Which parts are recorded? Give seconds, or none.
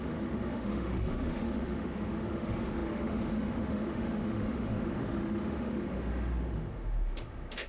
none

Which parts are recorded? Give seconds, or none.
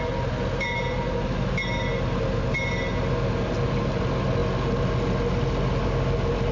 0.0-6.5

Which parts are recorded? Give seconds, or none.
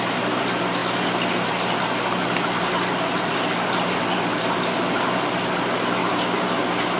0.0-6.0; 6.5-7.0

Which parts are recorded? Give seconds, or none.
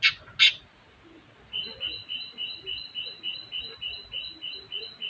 0.0-5.1